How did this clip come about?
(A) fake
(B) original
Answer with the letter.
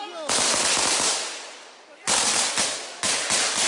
B